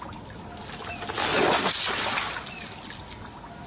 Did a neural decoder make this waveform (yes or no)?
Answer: no